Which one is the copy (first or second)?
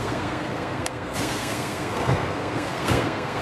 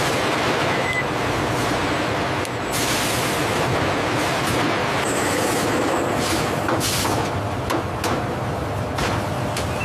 first